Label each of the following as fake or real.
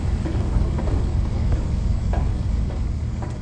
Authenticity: fake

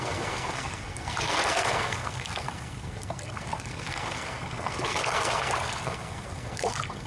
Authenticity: fake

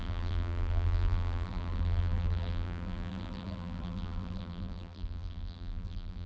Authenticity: fake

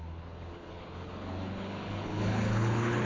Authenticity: fake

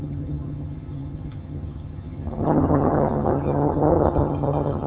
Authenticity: fake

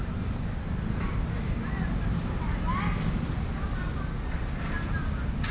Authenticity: real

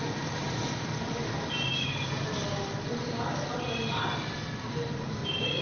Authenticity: real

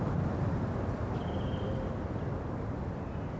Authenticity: real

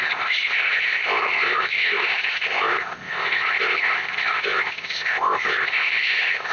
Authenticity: fake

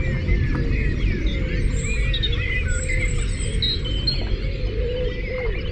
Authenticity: real